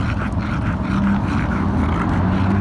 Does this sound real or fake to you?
real